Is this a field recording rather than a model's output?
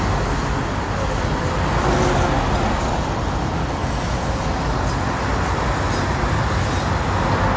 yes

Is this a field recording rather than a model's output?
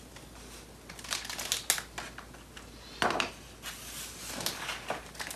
yes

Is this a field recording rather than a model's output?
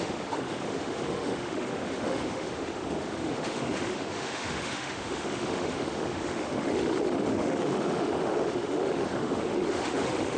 no